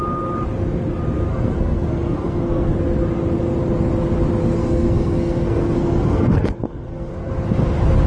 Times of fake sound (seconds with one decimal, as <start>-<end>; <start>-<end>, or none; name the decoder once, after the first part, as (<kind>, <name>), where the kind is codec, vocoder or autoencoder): 1.3-2.7 (codec, SNAC); 4.6-7.3